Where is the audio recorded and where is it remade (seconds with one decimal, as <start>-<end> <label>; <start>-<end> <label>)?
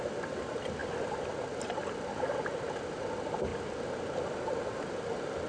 0.0-5.5 recorded